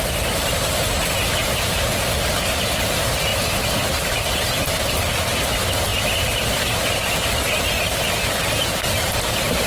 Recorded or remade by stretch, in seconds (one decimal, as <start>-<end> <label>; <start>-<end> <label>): 0.0-3.3 recorded; 3.3-4.3 remade; 4.3-5.9 recorded; 5.9-8.3 remade; 8.3-9.7 recorded